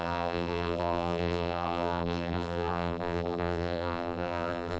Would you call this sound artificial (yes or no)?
yes